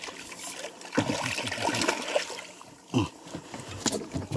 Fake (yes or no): no